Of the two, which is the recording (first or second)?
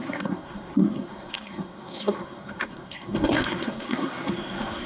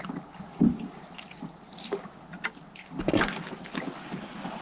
second